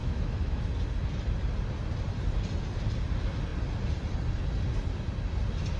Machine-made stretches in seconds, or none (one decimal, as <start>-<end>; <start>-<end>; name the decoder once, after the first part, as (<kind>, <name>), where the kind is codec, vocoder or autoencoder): 0.0-0.6 (autoencoder, DAC-VAE)